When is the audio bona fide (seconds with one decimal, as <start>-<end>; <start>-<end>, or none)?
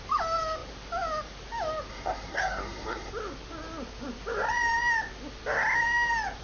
0.0-1.9; 3.1-6.4